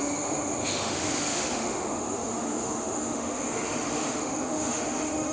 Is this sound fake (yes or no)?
yes